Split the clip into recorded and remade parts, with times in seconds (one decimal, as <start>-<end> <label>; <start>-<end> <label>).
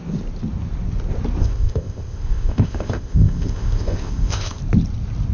0.0-1.4 recorded; 1.4-4.6 remade; 4.6-5.3 recorded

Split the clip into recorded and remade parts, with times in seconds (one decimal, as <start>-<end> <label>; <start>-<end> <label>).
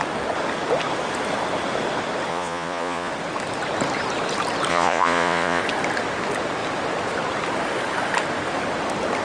0.0-2.3 recorded; 2.3-3.1 remade; 3.1-4.7 recorded; 4.7-5.6 remade; 5.6-9.2 recorded